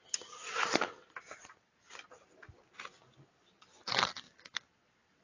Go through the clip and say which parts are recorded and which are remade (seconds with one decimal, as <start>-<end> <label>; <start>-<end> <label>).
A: 0.0-5.2 recorded